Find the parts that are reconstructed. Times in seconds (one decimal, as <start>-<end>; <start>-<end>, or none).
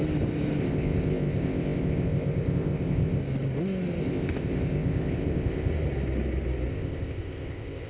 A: 0.6-3.2; 4.0-5.7; 6.7-7.9